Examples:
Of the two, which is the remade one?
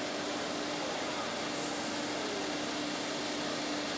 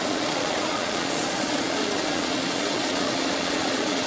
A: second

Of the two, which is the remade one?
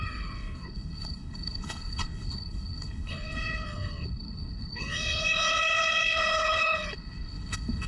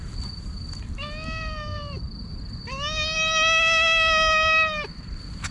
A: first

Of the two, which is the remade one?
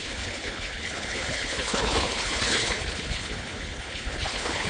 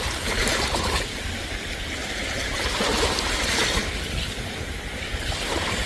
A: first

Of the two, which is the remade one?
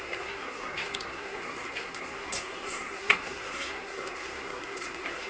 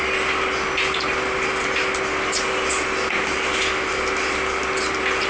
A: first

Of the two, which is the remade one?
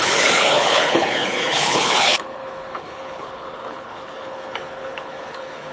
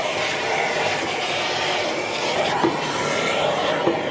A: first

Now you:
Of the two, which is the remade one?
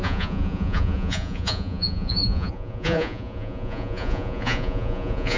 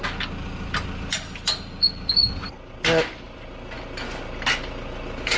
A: first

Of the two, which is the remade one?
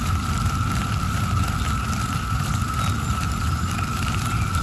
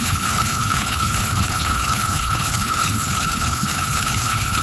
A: second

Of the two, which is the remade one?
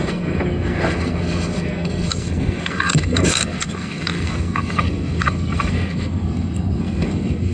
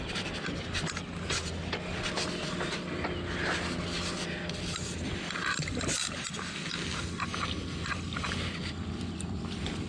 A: first